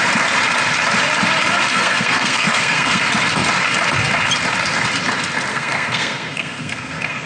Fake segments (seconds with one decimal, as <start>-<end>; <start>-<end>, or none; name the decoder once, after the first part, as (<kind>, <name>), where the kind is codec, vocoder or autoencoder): 1.7-3.0 (codec, SNAC); 5.5-7.3